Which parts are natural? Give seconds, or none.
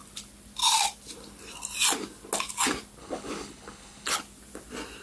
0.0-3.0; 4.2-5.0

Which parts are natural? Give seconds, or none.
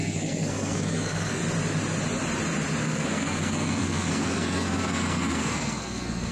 1.4-2.8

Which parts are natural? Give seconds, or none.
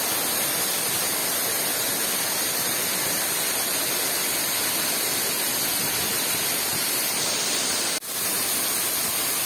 0.0-9.5